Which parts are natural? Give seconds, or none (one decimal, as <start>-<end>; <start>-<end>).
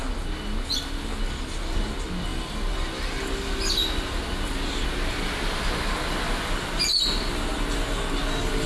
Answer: 0.0-8.7